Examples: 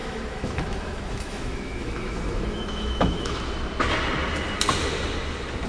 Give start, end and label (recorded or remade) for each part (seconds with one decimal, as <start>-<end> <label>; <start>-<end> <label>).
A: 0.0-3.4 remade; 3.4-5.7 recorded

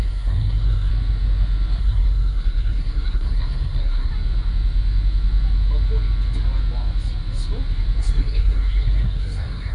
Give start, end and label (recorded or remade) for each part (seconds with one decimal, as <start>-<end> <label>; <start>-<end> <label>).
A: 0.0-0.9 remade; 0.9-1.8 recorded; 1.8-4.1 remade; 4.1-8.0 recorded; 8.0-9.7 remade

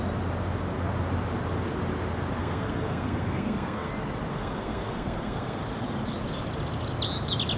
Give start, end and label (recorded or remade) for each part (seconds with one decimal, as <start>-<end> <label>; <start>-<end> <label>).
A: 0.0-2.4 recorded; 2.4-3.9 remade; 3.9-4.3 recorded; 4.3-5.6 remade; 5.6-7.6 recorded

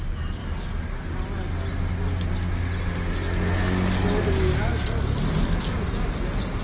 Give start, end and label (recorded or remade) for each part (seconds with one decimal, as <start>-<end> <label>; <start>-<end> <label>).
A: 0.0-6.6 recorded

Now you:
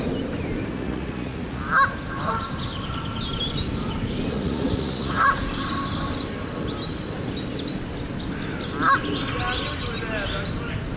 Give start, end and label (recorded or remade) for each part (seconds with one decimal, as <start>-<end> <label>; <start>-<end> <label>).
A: 0.0-0.7 recorded; 0.7-1.7 remade; 1.7-4.3 recorded; 4.3-5.5 remade; 5.5-11.0 recorded

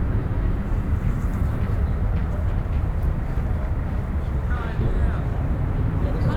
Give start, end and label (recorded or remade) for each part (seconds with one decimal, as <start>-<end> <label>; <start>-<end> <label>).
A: 0.0-6.4 recorded

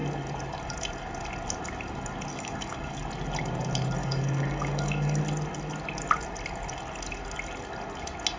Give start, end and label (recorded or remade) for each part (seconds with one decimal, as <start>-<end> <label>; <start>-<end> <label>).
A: 0.0-2.3 recorded; 2.3-3.0 remade; 3.0-4.0 recorded; 4.0-5.2 remade; 5.2-8.4 recorded